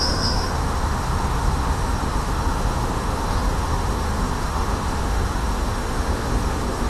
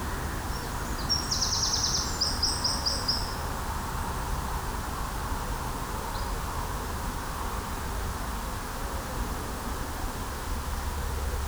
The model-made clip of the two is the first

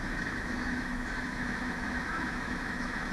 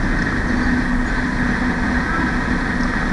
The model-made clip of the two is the first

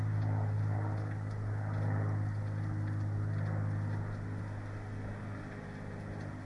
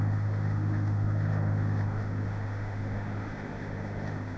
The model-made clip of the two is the second